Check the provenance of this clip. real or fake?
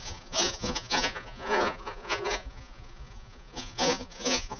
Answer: fake